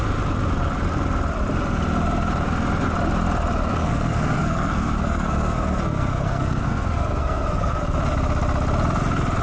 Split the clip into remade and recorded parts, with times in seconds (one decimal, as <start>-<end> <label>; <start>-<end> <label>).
0.0-3.7 recorded; 3.7-7.8 remade; 7.8-9.4 recorded